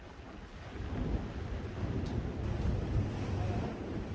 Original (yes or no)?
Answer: yes